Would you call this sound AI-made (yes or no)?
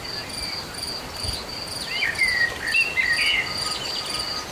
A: no